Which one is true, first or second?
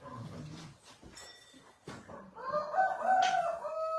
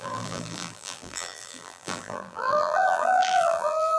first